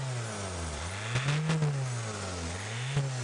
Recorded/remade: recorded